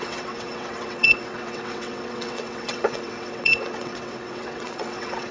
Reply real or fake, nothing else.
fake